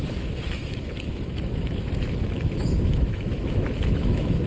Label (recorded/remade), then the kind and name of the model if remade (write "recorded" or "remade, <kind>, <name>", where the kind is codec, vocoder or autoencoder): remade, autoencoder, DAC-VAE